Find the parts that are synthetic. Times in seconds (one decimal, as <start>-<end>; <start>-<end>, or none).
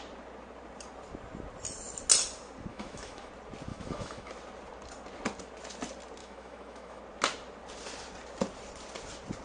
2.7-3.3; 3.7-4.3; 6.2-7.0